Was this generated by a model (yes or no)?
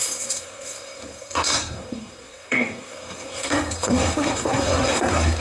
yes